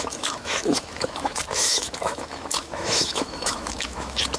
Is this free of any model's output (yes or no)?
no